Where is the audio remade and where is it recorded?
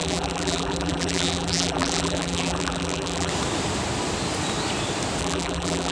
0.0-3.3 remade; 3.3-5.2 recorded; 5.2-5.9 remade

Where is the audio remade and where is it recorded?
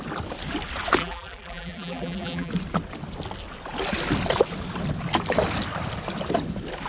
0.0-1.0 recorded; 1.0-2.5 remade; 2.5-6.9 recorded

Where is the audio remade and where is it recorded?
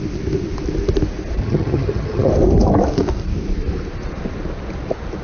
0.0-1.4 recorded; 1.4-2.3 remade; 2.3-5.2 recorded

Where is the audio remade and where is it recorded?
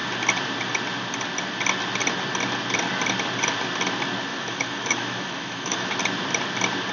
0.0-4.3 recorded; 4.3-5.9 remade; 5.9-6.9 recorded